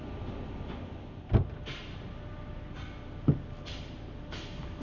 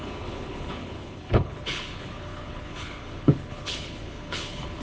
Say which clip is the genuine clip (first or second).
first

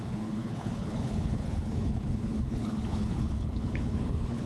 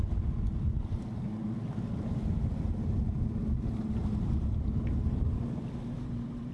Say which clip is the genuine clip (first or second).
second